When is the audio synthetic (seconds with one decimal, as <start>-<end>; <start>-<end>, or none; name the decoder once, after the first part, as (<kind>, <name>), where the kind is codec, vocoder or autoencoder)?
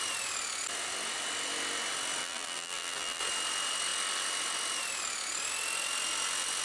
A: 2.2-3.2 (vocoder, BigVGAN v2)